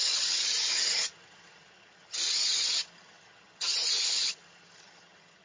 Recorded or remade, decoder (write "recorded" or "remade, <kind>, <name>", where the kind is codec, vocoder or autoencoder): remade, vocoder, HiFi-GAN